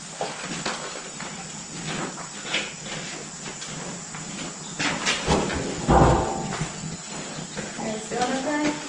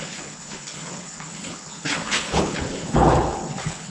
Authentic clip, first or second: first